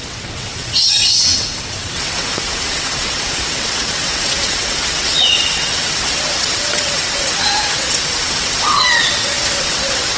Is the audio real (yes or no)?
no